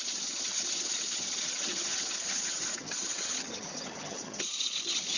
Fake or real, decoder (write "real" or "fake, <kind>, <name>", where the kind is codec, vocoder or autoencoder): fake, vocoder, HiFi-GAN